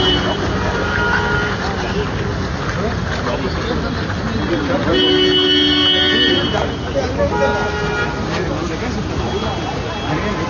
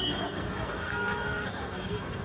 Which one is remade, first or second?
second